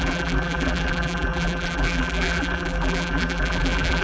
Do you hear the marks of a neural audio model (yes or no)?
yes